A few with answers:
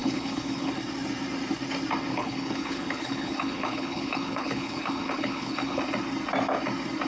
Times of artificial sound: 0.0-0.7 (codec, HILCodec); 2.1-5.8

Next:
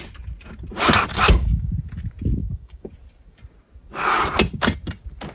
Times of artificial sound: 1.1-1.7 (codec, DAC); 2.4-2.9

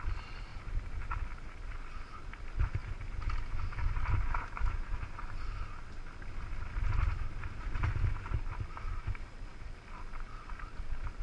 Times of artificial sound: none

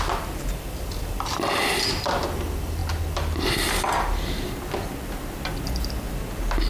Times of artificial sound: none

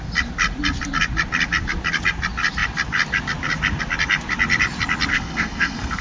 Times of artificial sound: 5.1-6.0 (codec, SNAC)

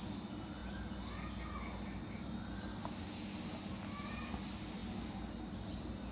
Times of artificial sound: none